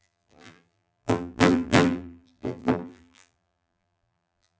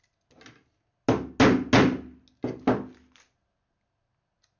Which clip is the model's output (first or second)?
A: first